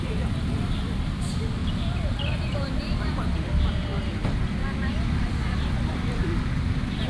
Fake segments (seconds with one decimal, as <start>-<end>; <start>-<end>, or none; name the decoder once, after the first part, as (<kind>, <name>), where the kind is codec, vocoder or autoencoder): 0.0-1.6 (vocoder, BigVGAN v2); 3.0-7.1